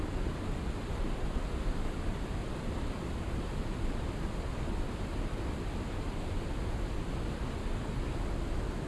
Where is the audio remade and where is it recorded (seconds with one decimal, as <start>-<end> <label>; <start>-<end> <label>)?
0.0-2.4 recorded; 2.4-3.2 remade; 3.2-8.9 recorded